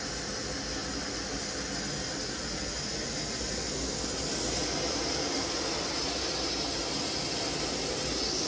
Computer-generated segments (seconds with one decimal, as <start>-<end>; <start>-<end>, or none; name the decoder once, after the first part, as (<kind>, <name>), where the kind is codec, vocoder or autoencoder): none